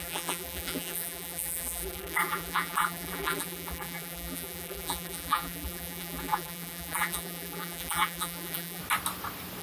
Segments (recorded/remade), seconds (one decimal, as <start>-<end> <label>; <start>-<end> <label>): 0.0-8.8 remade; 8.8-9.6 recorded